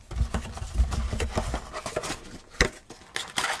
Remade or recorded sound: recorded